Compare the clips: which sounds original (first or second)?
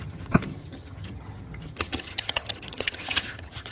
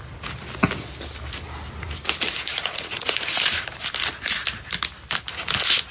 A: second